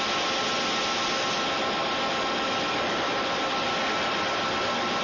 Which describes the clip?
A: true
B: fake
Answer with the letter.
A